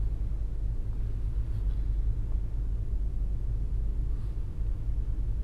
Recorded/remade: recorded